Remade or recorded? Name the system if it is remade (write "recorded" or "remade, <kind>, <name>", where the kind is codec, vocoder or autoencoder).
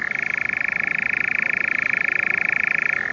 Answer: recorded